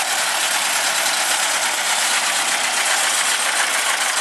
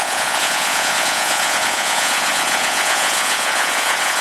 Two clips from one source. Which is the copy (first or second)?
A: second